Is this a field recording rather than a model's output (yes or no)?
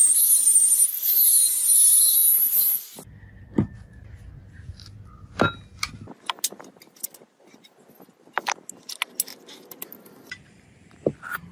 yes